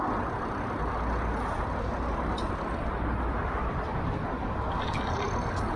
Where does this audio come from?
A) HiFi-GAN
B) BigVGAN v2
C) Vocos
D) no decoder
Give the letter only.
D